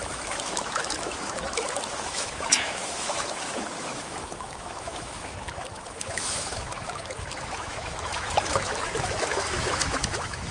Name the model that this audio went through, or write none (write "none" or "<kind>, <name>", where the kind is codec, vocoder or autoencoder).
autoencoder, DAC-VAE